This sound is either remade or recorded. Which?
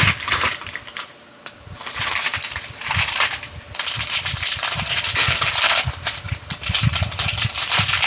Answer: remade